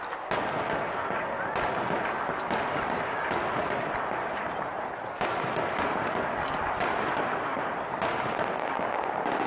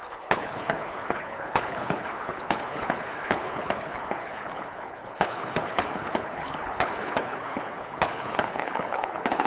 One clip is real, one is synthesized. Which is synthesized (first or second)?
second